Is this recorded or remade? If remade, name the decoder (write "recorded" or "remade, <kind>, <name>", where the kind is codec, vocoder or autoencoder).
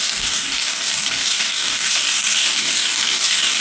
remade, codec, DAC